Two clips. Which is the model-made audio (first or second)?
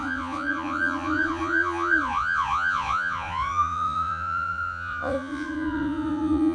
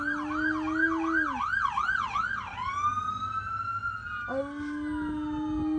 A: first